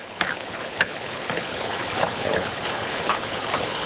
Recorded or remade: remade